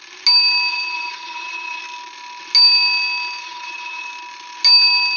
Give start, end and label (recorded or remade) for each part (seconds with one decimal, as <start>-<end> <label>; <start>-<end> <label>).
0.0-0.7 recorded; 0.7-1.8 remade; 1.8-3.4 recorded; 3.4-4.1 remade; 4.1-5.2 recorded